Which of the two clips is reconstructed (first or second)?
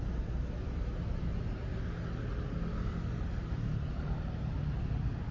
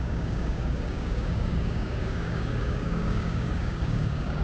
second